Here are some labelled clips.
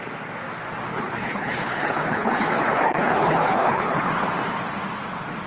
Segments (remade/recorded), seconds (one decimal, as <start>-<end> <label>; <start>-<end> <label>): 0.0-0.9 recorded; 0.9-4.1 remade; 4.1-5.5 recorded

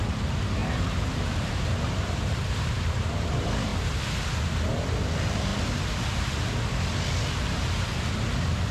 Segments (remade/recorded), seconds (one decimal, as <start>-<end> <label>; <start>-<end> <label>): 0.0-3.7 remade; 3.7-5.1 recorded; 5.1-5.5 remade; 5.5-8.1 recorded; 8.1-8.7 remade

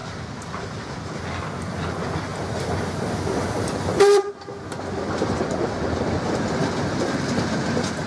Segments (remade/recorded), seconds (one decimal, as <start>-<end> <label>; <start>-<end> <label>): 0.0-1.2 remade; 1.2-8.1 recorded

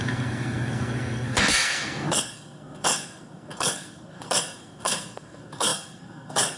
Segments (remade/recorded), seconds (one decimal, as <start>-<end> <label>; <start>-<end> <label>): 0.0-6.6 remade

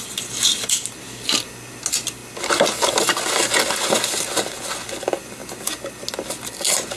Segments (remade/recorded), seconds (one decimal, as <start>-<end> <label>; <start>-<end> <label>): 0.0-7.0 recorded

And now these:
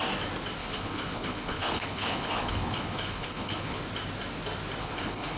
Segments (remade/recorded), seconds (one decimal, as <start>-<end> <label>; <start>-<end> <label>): 0.0-0.6 recorded; 0.6-3.8 remade; 3.8-4.8 recorded; 4.8-5.4 remade

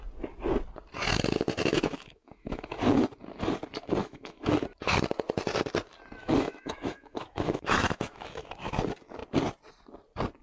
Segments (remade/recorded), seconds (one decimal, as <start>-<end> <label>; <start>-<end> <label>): 0.0-1.7 recorded; 1.7-2.8 remade; 2.8-4.0 recorded; 4.0-4.6 remade; 4.6-6.2 recorded; 6.2-8.5 remade; 8.5-10.4 recorded